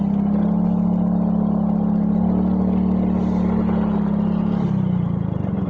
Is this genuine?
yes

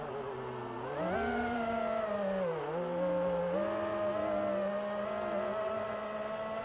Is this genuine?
yes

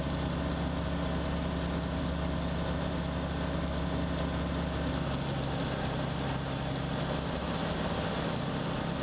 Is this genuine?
yes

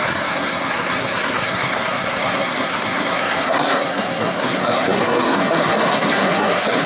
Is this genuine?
no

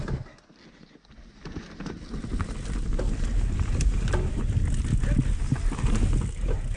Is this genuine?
yes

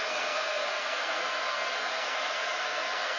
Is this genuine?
no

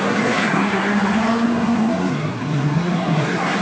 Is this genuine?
no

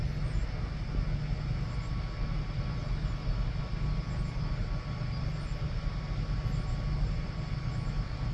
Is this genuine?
yes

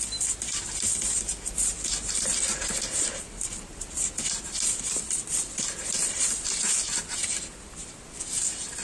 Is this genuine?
yes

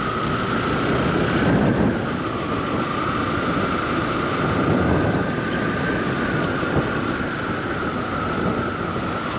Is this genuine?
yes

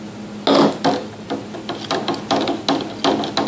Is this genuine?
yes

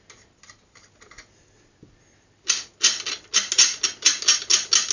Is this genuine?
yes